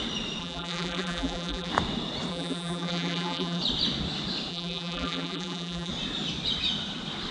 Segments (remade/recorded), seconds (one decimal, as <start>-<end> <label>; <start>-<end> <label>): 0.0-0.4 recorded; 0.4-1.7 remade; 1.7-2.3 recorded; 2.3-3.6 remade; 3.6-4.5 recorded; 4.5-5.9 remade; 5.9-7.3 recorded